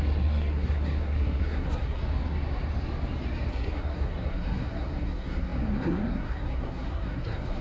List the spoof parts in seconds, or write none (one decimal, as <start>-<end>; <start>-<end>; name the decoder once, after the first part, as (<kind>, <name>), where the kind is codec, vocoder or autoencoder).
0.0-2.0 (codec, SNAC); 3.5-7.6